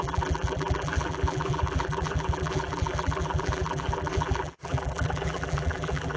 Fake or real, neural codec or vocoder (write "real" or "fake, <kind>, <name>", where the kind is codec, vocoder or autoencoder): fake, vocoder, BigVGAN v2